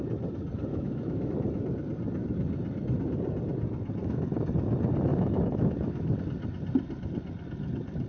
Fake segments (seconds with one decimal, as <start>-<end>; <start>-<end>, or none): 0.7-1.3; 5.1-6.2